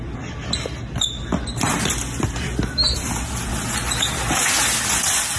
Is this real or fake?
real